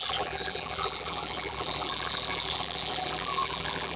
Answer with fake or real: fake